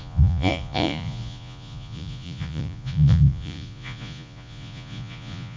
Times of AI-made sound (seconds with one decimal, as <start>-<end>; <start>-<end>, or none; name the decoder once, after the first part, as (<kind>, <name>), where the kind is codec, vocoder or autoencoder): 0.0-5.6 (vocoder, Vocos)